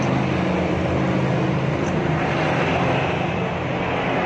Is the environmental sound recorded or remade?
recorded